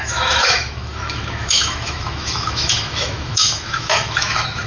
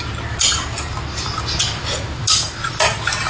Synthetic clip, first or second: first